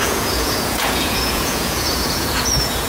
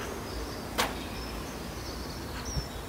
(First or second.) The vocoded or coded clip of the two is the first